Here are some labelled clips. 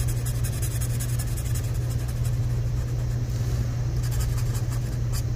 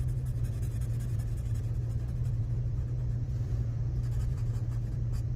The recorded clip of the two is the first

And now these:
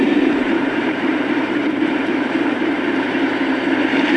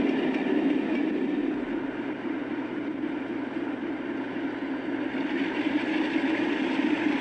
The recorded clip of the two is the second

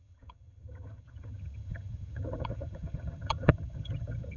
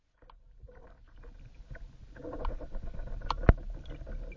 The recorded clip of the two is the second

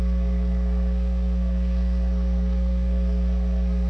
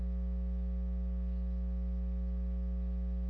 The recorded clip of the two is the second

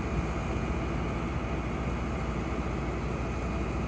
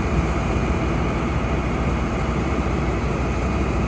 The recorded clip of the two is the first